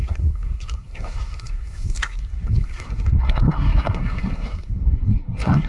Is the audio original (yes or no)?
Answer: no